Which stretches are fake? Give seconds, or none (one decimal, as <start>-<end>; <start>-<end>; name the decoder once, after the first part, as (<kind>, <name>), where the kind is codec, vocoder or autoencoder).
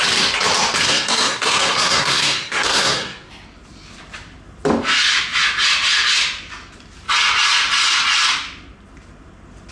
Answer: 0.8-3.3 (codec, SNAC)